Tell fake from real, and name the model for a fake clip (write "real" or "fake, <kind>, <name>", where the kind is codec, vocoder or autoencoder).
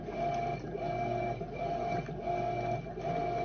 real